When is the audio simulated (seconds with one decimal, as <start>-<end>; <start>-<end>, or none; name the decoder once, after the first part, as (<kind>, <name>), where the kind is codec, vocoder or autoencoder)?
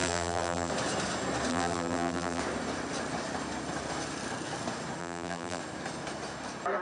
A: 0.0-0.7 (vocoder, BigVGAN v2); 1.5-2.4; 5.0-5.6